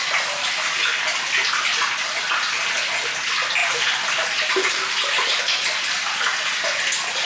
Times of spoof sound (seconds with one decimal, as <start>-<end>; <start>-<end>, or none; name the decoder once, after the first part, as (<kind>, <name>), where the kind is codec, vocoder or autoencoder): 3.6-5.4 (vocoder, BigVGAN v2)